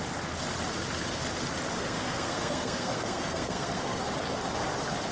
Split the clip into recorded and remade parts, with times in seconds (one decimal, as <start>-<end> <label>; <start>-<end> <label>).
0.0-1.8 recorded; 1.8-4.0 remade; 4.0-5.1 recorded

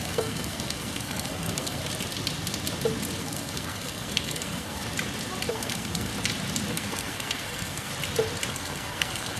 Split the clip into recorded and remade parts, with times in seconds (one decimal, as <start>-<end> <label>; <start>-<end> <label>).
0.0-1.8 remade; 1.8-3.2 recorded; 3.2-4.8 remade; 4.8-5.5 recorded; 5.5-6.1 remade; 6.1-6.7 recorded; 6.7-7.9 remade; 7.9-8.5 recorded; 8.5-9.4 remade

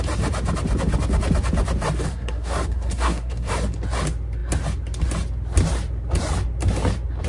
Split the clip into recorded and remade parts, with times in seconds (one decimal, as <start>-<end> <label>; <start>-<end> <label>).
0.0-2.1 recorded; 2.1-3.5 remade; 3.5-7.3 recorded

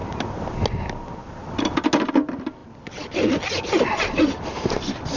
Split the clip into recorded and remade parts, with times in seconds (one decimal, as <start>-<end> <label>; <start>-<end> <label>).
0.0-5.2 recorded

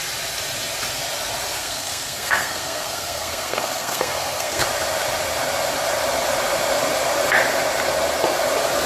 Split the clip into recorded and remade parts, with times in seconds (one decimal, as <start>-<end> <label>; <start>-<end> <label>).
0.0-1.6 recorded; 1.6-4.6 remade; 4.6-8.9 recorded

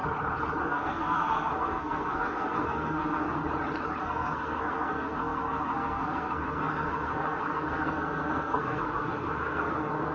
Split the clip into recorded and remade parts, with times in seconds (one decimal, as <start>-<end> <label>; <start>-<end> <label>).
0.0-0.6 recorded; 0.6-3.4 remade; 3.4-4.0 recorded; 4.0-10.1 remade